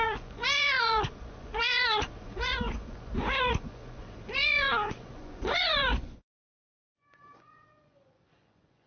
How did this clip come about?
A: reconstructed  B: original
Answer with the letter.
A